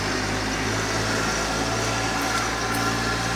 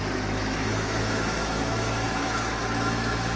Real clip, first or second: first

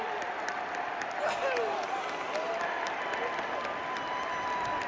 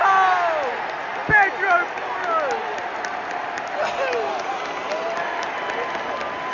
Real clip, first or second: second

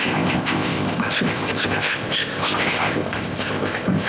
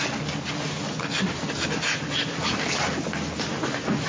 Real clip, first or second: second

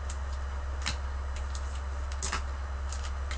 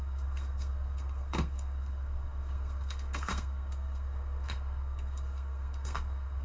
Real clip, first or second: first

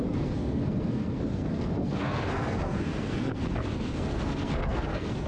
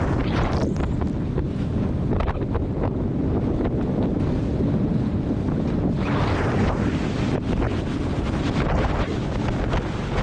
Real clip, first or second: second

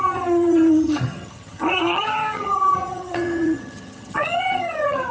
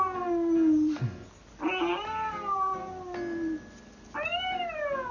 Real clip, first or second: second